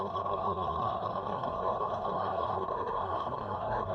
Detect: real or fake fake